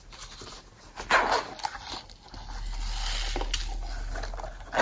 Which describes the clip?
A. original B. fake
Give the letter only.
A